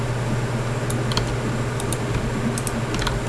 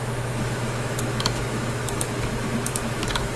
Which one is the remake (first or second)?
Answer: second